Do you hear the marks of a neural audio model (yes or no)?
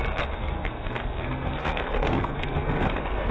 yes